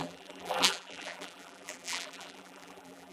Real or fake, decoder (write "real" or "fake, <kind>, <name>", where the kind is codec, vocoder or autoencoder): fake, vocoder, BigVGAN v2